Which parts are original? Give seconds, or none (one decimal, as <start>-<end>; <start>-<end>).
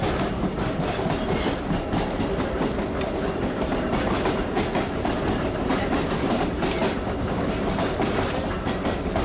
0.0-9.2